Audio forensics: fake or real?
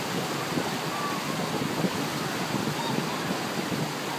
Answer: real